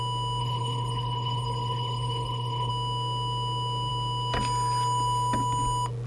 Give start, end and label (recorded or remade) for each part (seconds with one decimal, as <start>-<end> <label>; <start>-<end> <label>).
0.0-0.4 recorded; 0.4-2.7 remade; 2.7-6.1 recorded